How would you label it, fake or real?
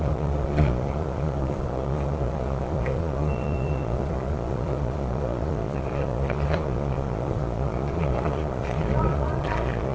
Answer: fake